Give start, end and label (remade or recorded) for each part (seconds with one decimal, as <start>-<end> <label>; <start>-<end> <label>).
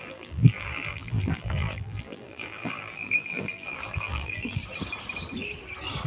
0.0-4.6 remade; 4.6-6.1 recorded